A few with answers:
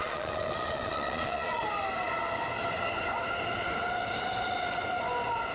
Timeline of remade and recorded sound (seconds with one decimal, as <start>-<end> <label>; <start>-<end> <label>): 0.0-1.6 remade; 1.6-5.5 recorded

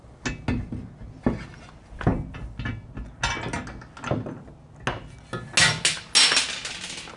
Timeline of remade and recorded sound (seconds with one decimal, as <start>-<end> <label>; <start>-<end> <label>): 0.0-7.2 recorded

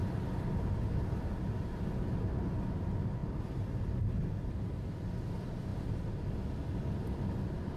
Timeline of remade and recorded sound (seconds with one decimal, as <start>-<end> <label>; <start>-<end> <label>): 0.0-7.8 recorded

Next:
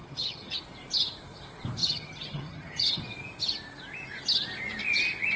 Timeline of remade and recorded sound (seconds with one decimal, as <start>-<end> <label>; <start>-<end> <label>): 0.0-0.6 remade; 0.6-1.8 recorded; 1.8-3.0 remade; 3.0-5.4 recorded

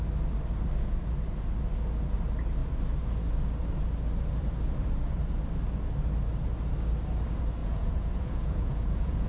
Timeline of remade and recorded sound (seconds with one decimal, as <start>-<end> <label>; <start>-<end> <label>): 0.0-7.6 recorded; 7.6-9.3 remade

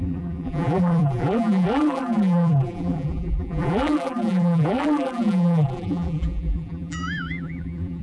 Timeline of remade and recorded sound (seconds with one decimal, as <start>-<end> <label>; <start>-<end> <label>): 0.0-8.0 remade

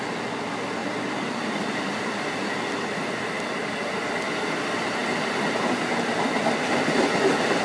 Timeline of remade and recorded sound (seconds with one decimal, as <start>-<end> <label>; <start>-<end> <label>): 0.0-0.8 recorded; 0.8-2.0 remade; 2.0-7.6 recorded

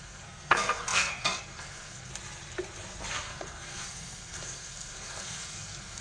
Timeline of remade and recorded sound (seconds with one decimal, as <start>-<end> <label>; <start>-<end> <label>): 0.0-2.1 remade; 2.1-3.1 recorded; 3.1-6.0 remade